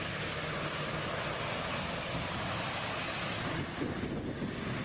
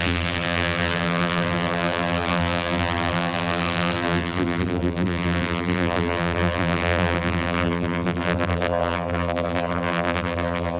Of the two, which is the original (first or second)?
first